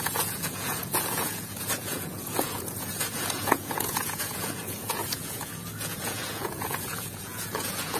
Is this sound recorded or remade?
remade